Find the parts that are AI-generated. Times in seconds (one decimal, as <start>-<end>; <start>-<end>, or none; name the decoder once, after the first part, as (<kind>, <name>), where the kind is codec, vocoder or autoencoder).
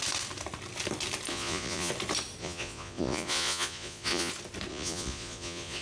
1.3-1.9 (vocoder, Vocos); 2.4-4.3; 4.7-5.8